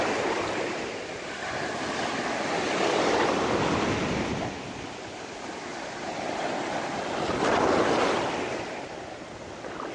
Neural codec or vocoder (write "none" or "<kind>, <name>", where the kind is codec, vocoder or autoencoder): none